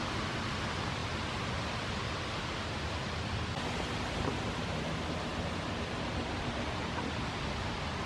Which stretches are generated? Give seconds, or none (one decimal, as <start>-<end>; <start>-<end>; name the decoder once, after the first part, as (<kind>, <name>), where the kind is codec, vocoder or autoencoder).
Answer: none